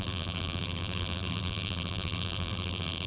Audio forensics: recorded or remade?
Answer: remade